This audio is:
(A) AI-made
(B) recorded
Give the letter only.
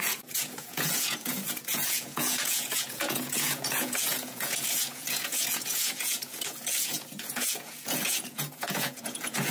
A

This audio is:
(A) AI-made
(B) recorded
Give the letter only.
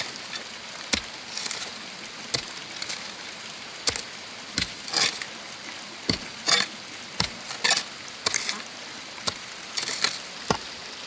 B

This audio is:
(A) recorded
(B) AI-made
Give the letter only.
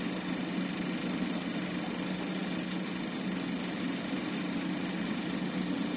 A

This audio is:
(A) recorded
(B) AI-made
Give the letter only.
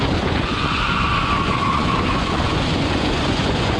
B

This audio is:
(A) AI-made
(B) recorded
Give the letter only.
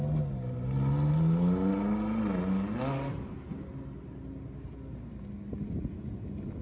B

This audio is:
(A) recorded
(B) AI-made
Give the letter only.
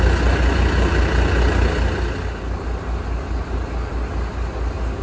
A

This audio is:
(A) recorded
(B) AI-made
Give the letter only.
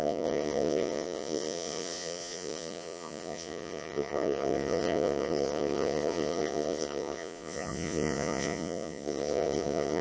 B